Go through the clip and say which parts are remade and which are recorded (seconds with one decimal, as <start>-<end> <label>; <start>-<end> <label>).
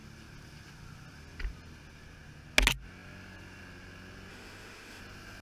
0.0-4.3 recorded; 4.3-5.0 remade; 5.0-5.4 recorded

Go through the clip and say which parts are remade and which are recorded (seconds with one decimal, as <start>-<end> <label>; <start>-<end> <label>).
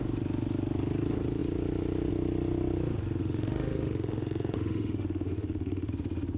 0.0-3.2 recorded; 3.2-5.9 remade; 5.9-6.4 recorded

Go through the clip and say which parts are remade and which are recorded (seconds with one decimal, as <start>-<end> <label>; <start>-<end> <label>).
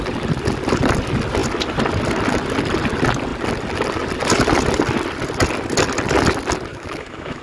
0.0-6.7 recorded; 6.7-7.4 remade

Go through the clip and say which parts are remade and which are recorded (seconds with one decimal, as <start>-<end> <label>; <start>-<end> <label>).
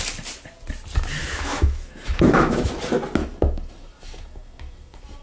0.0-1.2 recorded; 1.2-2.7 remade; 2.7-3.2 recorded; 3.2-5.2 remade